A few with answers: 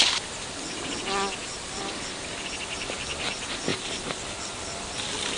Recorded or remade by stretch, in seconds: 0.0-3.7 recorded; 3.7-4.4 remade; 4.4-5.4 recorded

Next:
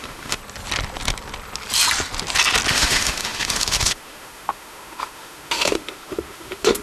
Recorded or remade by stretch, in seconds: 0.0-0.4 remade; 0.4-2.7 recorded; 2.7-6.8 remade

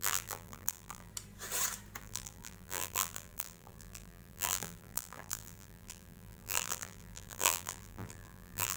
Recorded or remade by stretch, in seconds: 0.0-1.1 remade; 1.1-2.0 recorded; 2.0-8.8 remade

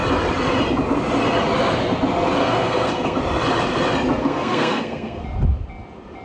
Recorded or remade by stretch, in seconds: 0.0-2.4 recorded; 2.4-3.2 remade; 3.2-4.2 recorded; 4.2-5.2 remade; 5.2-6.2 recorded